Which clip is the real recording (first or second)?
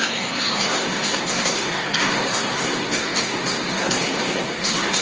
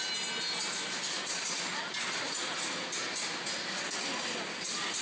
second